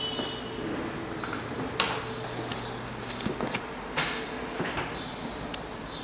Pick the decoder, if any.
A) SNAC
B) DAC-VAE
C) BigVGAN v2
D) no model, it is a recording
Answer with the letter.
D